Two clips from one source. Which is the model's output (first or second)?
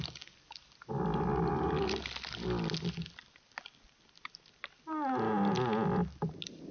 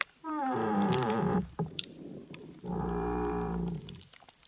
second